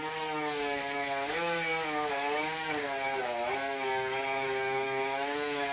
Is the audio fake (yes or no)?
yes